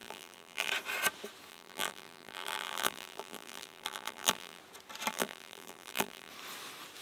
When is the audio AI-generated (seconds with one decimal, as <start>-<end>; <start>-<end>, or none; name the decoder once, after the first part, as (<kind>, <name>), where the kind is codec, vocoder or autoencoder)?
0.0-0.7 (vocoder, BigVGAN v2); 1.5-4.6; 5.1-6.3